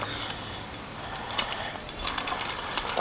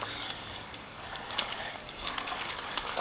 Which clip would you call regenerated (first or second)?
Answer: second